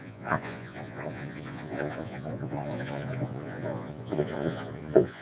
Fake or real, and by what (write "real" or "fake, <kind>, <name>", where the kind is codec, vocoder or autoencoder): fake, vocoder, Vocos